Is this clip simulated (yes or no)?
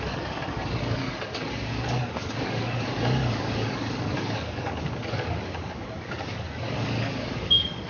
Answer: yes